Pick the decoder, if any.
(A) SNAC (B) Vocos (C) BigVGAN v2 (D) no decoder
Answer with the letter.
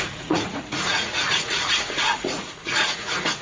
B